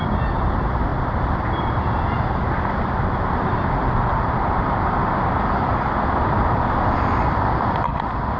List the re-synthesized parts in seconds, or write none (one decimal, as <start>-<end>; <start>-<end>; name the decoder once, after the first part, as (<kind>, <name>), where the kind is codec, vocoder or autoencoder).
0.0-8.4 (vocoder, BigVGAN v2)